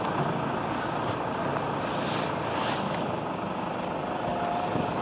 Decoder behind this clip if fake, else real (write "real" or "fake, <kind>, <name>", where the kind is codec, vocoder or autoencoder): real